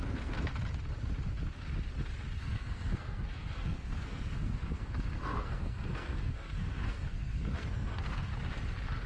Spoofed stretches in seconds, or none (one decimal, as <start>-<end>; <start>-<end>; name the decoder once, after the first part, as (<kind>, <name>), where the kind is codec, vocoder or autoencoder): 0.0-0.5 (codec, SNAC); 2.4-8.3